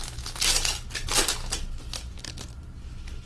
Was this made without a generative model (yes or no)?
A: yes